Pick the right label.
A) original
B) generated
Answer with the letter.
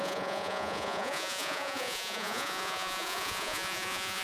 B